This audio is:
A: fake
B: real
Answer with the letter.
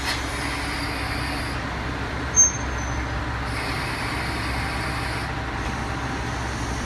B